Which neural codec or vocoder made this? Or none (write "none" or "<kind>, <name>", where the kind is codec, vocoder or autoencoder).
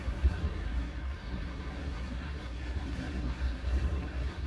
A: codec, SNAC